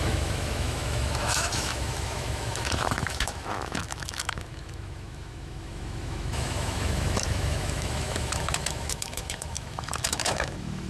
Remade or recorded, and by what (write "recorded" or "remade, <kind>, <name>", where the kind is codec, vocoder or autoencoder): remade, autoencoder, DAC-VAE